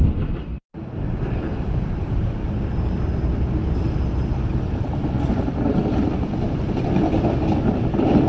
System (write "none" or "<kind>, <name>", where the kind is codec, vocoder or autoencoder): none